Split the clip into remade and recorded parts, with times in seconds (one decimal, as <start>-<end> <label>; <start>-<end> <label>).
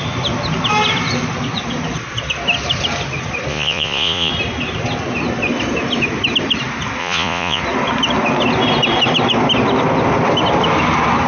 0.0-3.5 recorded; 3.5-4.3 remade; 4.3-7.0 recorded; 7.0-7.6 remade; 7.6-11.3 recorded